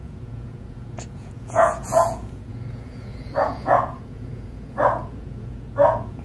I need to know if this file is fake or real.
fake